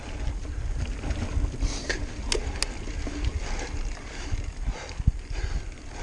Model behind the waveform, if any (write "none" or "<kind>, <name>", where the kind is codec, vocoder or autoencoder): none